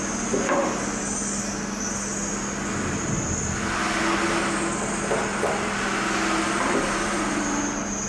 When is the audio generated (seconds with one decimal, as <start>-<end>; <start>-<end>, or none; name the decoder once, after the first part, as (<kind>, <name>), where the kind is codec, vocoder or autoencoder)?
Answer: none